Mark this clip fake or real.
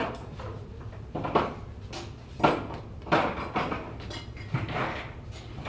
real